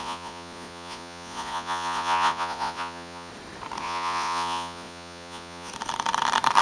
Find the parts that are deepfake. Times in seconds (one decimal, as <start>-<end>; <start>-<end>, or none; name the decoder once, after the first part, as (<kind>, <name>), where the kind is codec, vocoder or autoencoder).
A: 0.0-3.3 (vocoder, Vocos); 3.8-5.7